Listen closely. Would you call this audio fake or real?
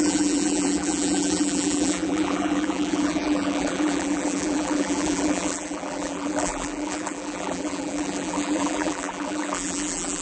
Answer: fake